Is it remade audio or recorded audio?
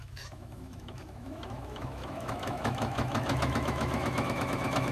remade